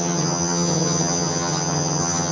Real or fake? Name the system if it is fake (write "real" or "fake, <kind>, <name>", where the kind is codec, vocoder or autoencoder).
fake, vocoder, HiFi-GAN